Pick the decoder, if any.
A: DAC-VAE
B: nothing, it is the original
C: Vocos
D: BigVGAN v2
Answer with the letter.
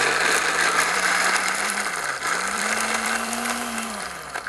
D